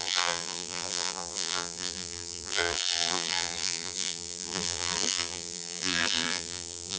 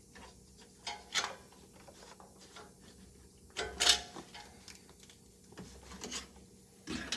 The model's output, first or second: first